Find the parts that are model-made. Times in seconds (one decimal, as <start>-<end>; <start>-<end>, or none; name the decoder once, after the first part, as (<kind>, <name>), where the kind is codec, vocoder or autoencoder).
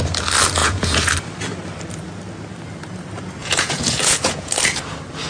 0.6-1.1 (vocoder, Vocos); 3.4-4.5